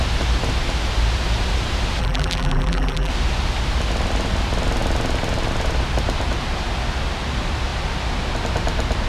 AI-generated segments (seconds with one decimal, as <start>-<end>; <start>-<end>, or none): 2.0-3.1